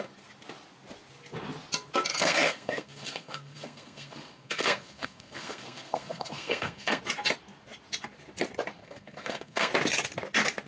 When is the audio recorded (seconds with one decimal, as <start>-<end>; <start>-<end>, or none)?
0.0-2.1; 7.0-8.8; 9.7-10.7